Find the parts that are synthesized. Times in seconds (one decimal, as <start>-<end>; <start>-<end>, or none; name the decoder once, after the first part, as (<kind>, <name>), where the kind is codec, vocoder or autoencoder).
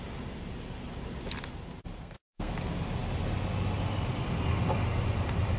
2.0-2.5 (codec, SNAC)